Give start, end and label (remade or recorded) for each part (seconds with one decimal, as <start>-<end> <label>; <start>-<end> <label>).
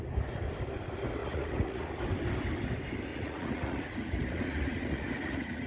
0.0-1.2 recorded; 1.2-1.9 remade; 1.9-3.1 recorded; 3.1-5.7 remade